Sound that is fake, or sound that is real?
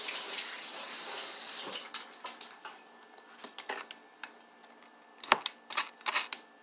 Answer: real